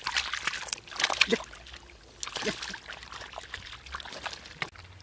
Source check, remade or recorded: recorded